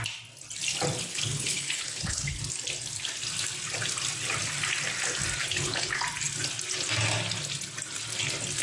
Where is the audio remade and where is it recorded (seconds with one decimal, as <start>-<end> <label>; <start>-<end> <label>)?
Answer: 0.0-1.0 recorded; 1.0-2.4 remade; 2.4-5.4 recorded; 5.4-6.0 remade; 6.0-8.6 recorded